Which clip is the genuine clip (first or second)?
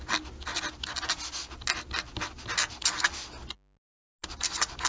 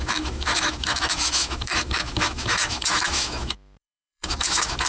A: first